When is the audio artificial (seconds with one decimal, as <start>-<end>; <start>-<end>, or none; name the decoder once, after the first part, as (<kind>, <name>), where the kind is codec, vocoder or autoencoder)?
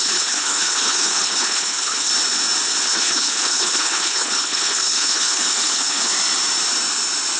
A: 0.0-2.1 (codec, HILCodec); 2.8-6.1